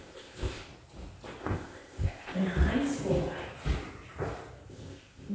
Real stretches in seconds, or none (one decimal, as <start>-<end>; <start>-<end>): 0.7-1.4; 2.4-4.7